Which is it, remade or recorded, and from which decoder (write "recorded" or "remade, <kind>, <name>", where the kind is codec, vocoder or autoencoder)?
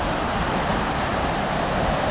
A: recorded